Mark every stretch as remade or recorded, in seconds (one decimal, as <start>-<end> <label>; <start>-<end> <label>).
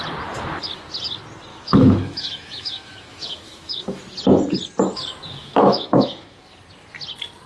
0.0-1.5 recorded; 1.5-4.0 remade; 4.0-5.4 recorded; 5.4-6.5 remade; 6.5-7.5 recorded